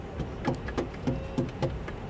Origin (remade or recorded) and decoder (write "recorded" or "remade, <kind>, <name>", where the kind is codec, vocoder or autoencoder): recorded